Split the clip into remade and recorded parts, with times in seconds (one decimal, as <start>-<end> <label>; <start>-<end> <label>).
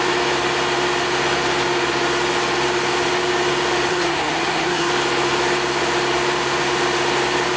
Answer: 0.0-3.9 recorded; 3.9-4.9 remade; 4.9-7.6 recorded